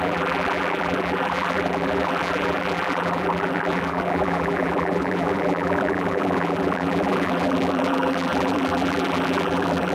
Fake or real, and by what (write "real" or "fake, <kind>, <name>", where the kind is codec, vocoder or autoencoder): fake, vocoder, BigVGAN v2